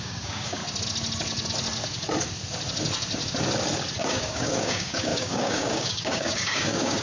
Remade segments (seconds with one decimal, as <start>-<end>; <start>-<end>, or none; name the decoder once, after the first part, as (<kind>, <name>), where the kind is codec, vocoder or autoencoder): 0.0-0.6 (codec, DAC); 4.0-7.0